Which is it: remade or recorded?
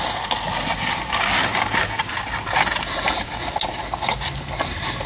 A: recorded